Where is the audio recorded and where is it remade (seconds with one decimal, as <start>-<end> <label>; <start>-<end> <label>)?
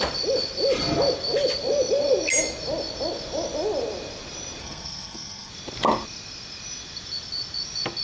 0.0-4.6 recorded; 4.6-5.5 remade; 5.5-8.0 recorded